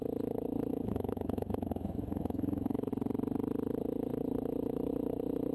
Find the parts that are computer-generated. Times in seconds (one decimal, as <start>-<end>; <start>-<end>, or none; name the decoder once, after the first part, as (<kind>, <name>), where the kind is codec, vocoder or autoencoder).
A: 0.7-2.9 (autoencoder, DAC-VAE)